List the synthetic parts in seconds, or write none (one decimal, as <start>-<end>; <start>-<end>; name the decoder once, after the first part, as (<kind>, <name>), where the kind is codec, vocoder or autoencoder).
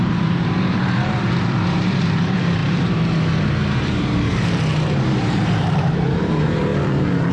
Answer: 0.0-6.7 (vocoder, BigVGAN v2)